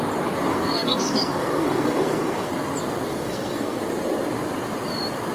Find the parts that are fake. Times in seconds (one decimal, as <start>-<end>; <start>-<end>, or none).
0.5-2.5; 3.1-3.8